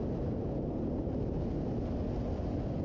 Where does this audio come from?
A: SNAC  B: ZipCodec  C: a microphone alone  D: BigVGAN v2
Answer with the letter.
C